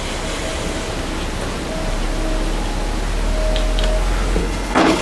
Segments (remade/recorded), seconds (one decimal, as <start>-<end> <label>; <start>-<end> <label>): 0.0-4.4 recorded; 4.4-5.0 remade